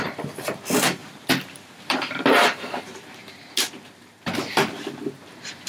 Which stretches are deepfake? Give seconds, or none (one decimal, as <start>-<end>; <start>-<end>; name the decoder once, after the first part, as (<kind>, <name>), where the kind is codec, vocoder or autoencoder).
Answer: 1.0-4.4 (vocoder, BigVGAN v2)